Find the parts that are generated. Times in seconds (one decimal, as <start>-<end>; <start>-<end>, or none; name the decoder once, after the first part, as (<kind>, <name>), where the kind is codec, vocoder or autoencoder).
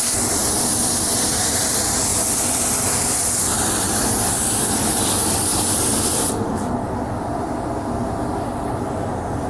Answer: none